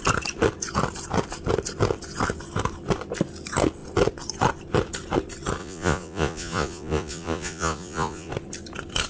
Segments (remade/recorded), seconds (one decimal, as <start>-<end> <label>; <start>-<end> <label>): 0.0-5.6 recorded; 5.6-8.3 remade; 8.3-9.1 recorded